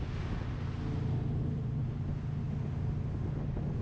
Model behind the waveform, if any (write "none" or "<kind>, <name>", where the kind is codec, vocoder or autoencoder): none